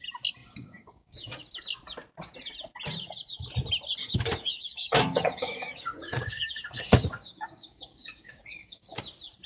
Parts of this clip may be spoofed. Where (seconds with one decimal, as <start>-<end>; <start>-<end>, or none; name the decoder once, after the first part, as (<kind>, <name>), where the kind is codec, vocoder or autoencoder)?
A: 0.4-1.4 (codec, DAC); 4.0-9.0